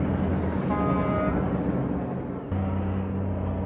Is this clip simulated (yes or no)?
no